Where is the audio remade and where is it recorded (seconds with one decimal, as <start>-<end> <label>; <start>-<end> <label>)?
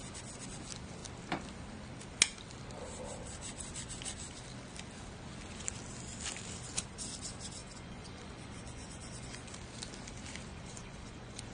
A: 0.0-7.6 recorded; 7.6-9.5 remade; 9.5-10.5 recorded; 10.5-11.5 remade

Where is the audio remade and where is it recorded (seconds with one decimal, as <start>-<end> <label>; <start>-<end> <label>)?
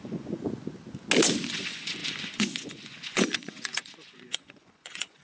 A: 0.0-0.4 remade; 0.4-1.5 recorded; 1.5-5.2 remade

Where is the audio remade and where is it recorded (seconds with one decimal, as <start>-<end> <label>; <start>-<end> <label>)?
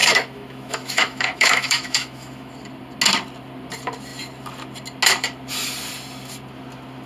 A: 0.0-2.5 remade; 2.5-7.1 recorded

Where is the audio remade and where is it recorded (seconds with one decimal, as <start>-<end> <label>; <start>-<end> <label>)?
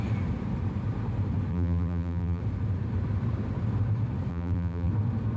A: 0.0-1.5 recorded; 1.5-2.4 remade; 2.4-4.3 recorded; 4.3-4.9 remade; 4.9-5.4 recorded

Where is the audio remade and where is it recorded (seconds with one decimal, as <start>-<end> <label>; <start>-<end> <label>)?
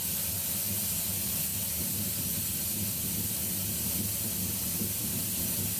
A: 0.0-5.8 recorded